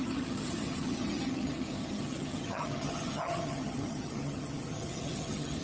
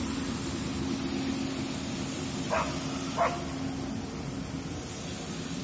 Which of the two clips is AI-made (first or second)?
first